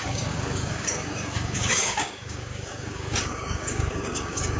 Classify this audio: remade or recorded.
remade